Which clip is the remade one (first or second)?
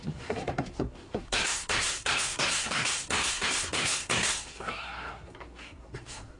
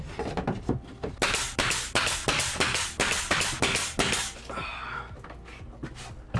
first